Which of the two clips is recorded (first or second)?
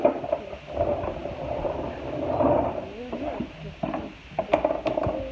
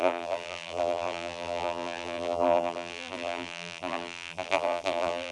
first